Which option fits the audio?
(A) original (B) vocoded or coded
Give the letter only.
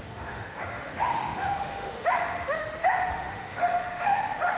B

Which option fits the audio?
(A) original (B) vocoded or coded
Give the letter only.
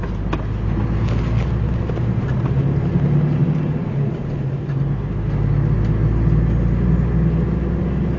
A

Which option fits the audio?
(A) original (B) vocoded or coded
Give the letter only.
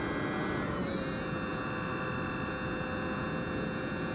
A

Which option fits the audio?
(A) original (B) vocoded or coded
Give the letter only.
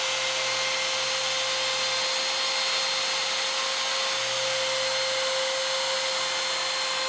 A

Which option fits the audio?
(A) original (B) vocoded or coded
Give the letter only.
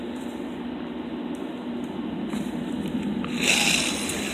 A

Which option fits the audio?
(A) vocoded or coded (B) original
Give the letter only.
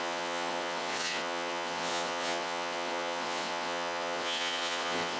A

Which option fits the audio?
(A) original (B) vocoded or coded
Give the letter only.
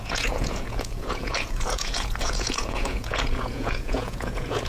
B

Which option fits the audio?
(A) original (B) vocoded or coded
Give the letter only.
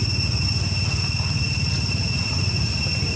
A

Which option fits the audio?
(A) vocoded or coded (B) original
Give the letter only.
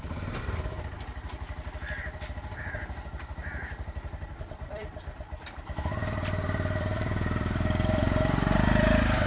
A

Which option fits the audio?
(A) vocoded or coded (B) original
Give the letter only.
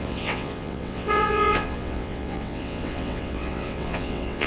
A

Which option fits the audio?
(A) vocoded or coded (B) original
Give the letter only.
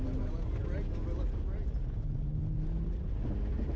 B